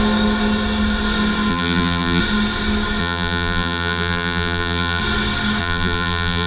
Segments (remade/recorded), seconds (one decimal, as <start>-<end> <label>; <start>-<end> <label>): 0.0-1.5 recorded; 1.5-2.2 remade; 2.2-3.0 recorded; 3.0-5.0 remade; 5.0-5.6 recorded; 5.6-6.5 remade